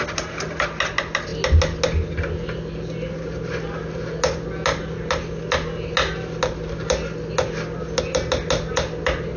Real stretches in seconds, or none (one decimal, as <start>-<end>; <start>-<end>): 0.0-9.4